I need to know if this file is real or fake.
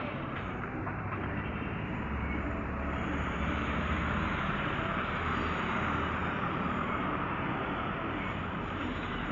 fake